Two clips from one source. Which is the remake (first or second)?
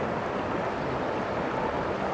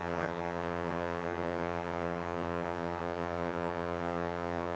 second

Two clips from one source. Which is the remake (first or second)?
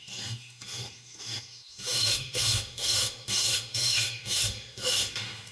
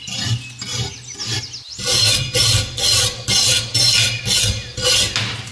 first